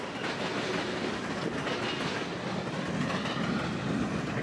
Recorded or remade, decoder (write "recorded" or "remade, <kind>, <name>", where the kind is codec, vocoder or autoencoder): recorded